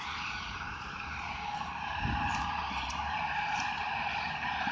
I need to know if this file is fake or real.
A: fake